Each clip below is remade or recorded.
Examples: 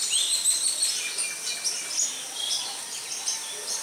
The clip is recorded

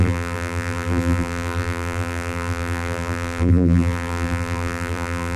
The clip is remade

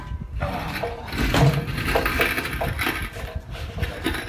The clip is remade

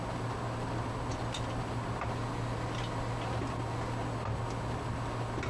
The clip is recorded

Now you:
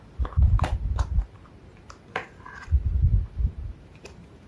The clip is remade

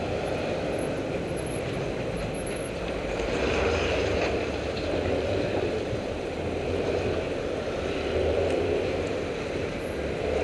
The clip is remade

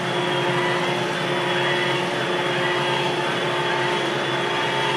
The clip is recorded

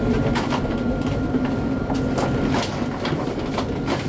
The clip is recorded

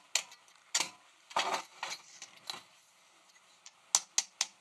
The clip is recorded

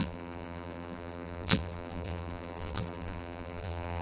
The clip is remade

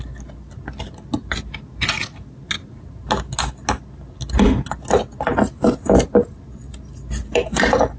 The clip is recorded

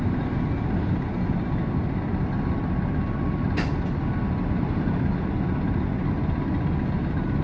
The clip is recorded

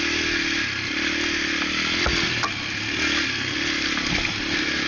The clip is recorded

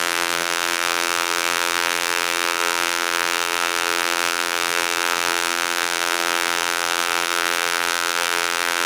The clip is remade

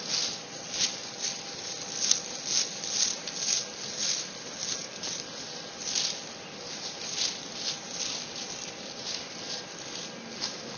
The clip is recorded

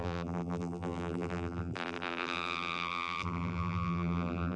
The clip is remade